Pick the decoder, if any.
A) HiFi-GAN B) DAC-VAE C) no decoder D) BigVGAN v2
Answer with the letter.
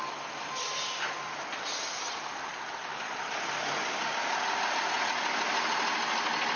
C